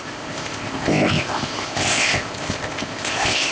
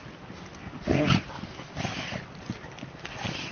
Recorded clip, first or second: second